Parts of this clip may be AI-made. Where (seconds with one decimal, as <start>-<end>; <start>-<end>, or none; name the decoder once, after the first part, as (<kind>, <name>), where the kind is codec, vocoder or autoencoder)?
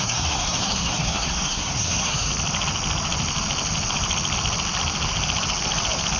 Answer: 0.0-2.3 (codec, SNAC)